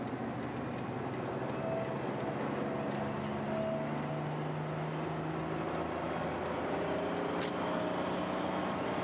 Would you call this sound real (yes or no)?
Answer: yes